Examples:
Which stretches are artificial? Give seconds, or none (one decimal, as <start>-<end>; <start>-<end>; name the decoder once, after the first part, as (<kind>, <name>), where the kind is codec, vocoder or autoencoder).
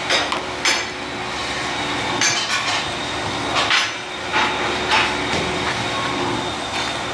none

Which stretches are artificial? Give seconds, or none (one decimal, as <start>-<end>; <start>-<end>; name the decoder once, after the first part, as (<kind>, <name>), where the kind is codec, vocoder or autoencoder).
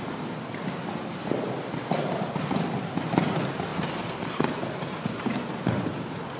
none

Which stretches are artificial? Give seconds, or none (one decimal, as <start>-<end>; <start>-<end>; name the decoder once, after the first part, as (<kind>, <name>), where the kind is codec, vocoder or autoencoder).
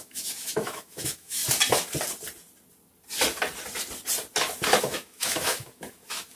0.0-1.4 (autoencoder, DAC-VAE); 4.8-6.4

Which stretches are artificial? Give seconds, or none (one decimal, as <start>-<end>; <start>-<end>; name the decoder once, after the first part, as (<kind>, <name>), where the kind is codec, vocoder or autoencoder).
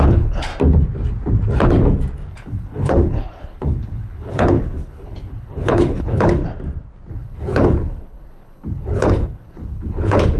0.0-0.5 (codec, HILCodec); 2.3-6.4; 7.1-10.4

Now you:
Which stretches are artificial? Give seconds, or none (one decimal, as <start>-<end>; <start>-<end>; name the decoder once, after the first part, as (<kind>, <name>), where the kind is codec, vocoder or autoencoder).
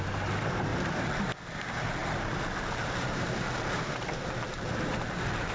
0.7-1.2 (vocoder, BigVGAN v2); 2.0-5.5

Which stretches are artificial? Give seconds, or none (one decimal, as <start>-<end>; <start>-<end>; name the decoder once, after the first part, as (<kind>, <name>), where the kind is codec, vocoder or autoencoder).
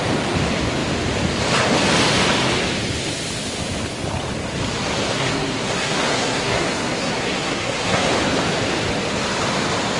5.1-8.1 (codec, SNAC)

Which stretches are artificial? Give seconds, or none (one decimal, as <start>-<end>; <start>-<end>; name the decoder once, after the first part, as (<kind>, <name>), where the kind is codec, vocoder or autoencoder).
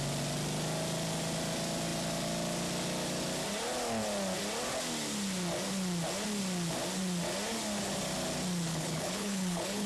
8.7-9.9 (codec, HILCodec)